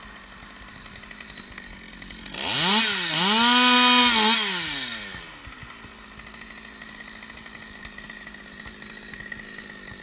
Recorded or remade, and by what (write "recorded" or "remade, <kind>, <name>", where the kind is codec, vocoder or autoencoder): recorded